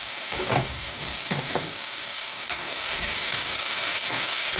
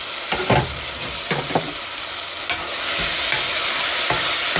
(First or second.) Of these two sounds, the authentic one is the second